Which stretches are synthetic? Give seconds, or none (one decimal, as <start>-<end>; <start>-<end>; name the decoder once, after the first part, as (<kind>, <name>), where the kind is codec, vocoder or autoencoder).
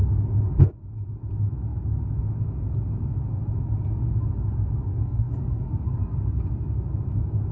4.9-5.6 (codec, SNAC)